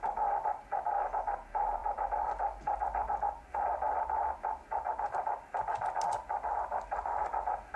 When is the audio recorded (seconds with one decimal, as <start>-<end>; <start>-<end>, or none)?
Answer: 0.0-1.8; 3.4-7.8